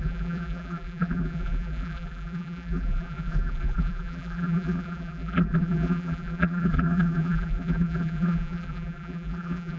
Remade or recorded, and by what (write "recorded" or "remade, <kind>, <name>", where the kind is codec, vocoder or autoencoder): remade, vocoder, BigVGAN v2